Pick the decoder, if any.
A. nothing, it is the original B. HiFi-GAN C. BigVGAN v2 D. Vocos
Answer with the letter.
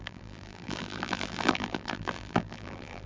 C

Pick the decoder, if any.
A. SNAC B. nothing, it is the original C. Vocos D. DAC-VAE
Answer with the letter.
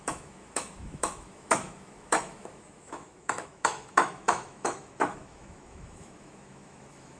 D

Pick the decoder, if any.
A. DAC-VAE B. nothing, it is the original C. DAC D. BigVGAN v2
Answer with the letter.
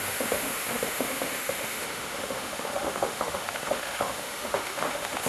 A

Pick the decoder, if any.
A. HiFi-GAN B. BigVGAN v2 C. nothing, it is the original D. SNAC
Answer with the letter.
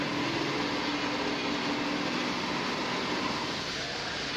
C